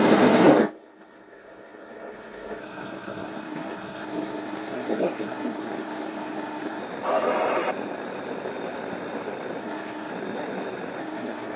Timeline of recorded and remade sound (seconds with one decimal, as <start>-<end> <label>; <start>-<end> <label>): 0.0-6.8 remade; 6.8-9.6 recorded; 9.6-10.1 remade; 10.1-11.0 recorded; 11.0-11.6 remade